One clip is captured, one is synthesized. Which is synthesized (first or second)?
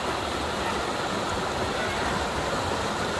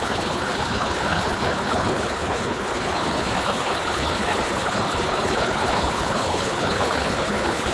second